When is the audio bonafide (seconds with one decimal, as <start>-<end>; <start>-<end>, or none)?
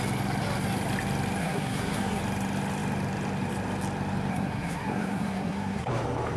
0.0-1.4; 2.2-4.3; 5.9-6.4